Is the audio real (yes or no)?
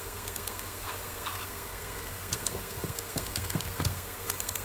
no